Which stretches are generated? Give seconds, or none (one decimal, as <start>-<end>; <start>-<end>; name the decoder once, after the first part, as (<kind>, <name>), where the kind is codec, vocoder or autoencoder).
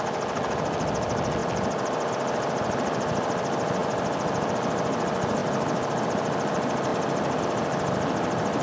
none